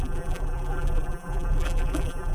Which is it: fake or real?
fake